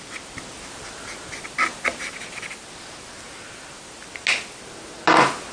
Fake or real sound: real